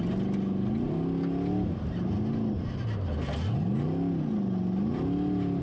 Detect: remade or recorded recorded